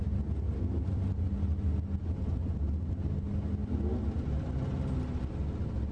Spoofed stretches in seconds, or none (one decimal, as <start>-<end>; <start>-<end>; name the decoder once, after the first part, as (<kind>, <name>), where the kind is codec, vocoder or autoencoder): none